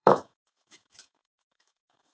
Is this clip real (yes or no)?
no